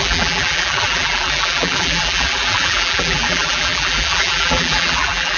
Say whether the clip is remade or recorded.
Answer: remade